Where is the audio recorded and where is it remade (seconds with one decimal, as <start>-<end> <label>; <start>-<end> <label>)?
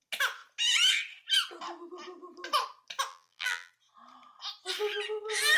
0.0-3.1 recorded; 3.1-3.7 remade; 3.7-5.6 recorded